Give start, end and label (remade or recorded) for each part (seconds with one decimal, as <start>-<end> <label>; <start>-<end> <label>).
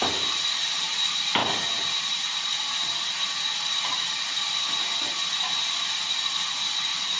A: 0.0-1.4 remade; 1.4-3.8 recorded; 3.8-7.2 remade